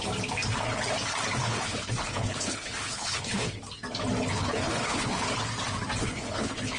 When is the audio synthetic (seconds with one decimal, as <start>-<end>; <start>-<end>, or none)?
1.4-3.6; 4.3-5.3; 6.0-6.8